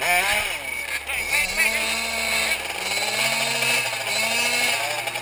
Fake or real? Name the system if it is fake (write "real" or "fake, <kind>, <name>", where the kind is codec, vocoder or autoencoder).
real